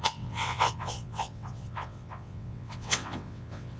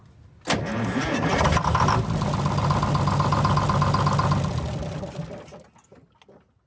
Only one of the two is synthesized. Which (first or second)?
first